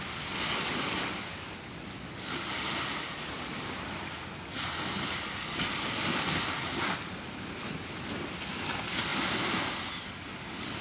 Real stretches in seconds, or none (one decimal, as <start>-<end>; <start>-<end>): 0.0-10.8